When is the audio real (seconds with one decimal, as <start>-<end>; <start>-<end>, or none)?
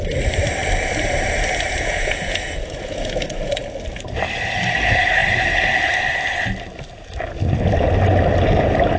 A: 0.0-1.7; 3.6-9.0